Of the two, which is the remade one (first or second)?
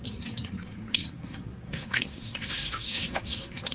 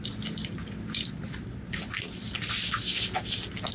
first